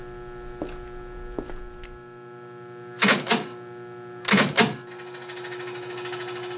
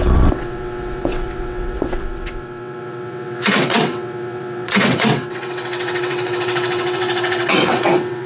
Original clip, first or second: first